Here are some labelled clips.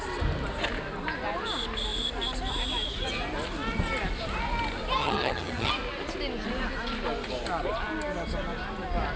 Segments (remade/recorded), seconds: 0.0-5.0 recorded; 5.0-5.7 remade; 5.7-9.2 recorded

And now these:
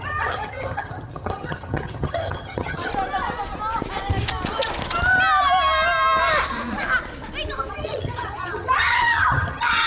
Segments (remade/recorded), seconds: 0.0-2.9 remade; 2.9-7.7 recorded; 7.7-9.9 remade